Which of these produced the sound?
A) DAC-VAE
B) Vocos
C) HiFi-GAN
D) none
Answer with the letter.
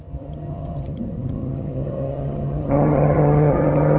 C